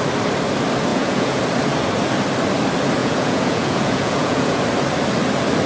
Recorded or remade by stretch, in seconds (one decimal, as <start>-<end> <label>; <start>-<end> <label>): 0.0-0.9 recorded; 0.9-1.4 remade; 1.4-3.0 recorded; 3.0-4.6 remade; 4.6-5.7 recorded